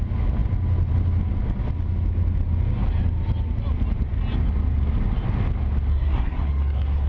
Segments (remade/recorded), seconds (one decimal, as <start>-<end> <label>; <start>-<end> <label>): 0.0-5.9 recorded; 5.9-7.1 remade